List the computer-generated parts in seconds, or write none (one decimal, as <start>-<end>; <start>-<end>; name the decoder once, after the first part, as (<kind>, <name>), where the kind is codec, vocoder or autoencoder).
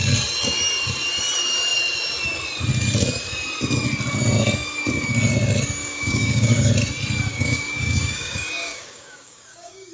5.8-6.7 (codec, DAC); 7.3-9.9